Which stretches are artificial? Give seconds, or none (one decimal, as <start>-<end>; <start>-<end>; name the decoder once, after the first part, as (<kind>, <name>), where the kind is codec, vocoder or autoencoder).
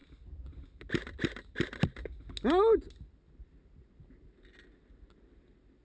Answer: none